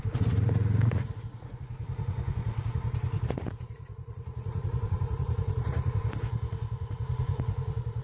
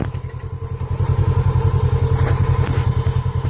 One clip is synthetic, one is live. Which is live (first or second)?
second